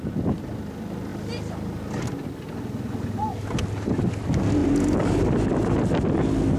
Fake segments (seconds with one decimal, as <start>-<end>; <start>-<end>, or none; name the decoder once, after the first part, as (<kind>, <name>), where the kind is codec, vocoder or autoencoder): none